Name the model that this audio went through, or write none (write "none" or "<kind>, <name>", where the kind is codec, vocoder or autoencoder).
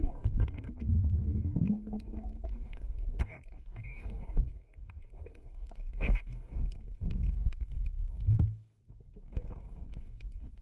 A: codec, DAC